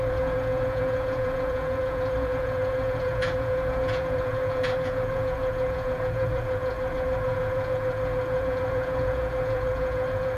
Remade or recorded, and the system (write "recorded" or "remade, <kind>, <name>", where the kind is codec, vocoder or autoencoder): remade, vocoder, Vocos